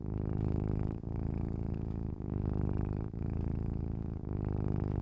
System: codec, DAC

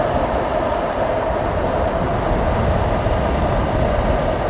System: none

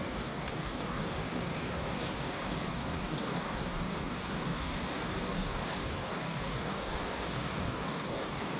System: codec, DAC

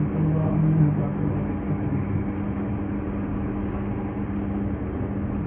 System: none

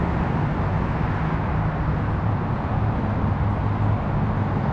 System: none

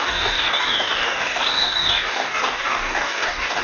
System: codec, DAC